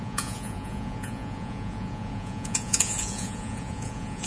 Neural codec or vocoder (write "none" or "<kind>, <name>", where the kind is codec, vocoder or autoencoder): vocoder, Vocos